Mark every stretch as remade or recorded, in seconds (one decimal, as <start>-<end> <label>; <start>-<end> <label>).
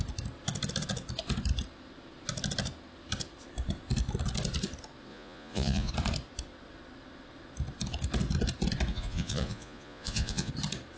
0.0-5.1 recorded; 5.1-5.9 remade; 5.9-8.9 recorded; 8.9-10.5 remade; 10.5-11.0 recorded